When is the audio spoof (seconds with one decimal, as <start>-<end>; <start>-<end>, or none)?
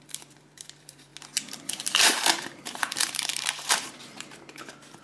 0.0-1.1; 1.7-5.0